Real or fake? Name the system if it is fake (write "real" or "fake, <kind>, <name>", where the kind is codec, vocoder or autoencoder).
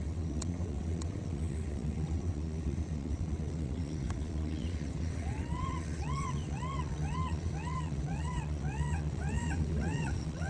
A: fake, vocoder, WaveNeXt